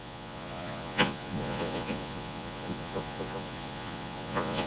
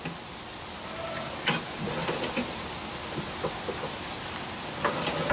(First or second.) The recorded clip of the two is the second